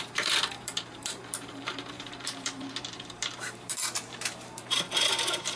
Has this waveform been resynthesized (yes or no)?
yes